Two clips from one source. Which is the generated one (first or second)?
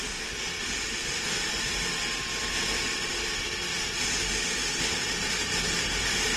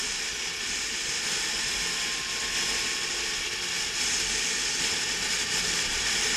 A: second